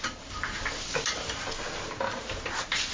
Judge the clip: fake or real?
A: real